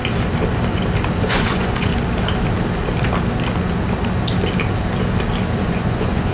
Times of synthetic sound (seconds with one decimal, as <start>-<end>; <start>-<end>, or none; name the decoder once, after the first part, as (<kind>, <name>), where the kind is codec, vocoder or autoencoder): 1.3-1.9 (vocoder, Vocos); 5.6-6.3